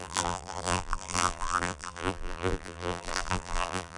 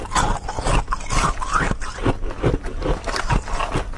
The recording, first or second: second